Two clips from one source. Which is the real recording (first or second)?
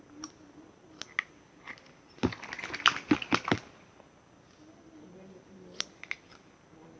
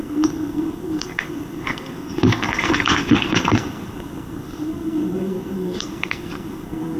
first